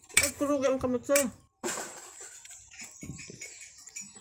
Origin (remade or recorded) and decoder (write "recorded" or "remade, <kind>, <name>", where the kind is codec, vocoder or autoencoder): remade, vocoder, BigVGAN v2